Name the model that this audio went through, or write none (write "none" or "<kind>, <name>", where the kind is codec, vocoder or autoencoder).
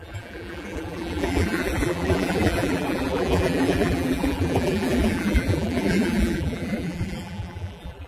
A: vocoder, BigVGAN v2